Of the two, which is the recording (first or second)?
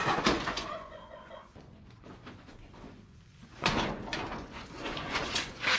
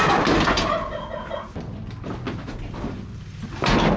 second